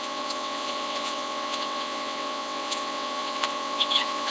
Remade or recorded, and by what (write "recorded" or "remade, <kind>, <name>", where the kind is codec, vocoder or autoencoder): remade, vocoder, WaveNeXt